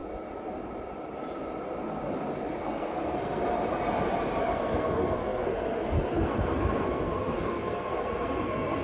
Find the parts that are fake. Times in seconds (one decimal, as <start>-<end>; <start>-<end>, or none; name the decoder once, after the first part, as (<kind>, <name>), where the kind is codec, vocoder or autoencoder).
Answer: 2.6-3.4 (codec, SNAC); 4.4-8.8